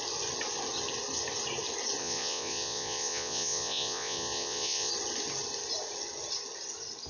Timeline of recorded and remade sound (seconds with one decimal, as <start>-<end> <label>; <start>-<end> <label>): 0.0-2.0 recorded; 2.0-4.9 remade; 4.9-7.1 recorded